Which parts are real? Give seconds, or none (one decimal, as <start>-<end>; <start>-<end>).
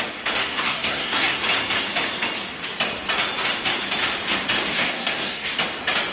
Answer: 0.0-0.4; 1.4-4.7; 5.5-6.1